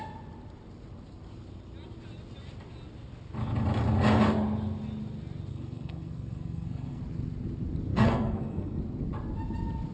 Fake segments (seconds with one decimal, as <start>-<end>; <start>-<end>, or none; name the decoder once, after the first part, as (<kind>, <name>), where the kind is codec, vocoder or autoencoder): 5.5-7.0 (codec, SNAC); 7.9-8.8